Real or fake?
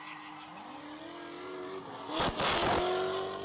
real